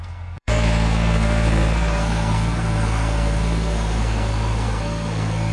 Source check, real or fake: fake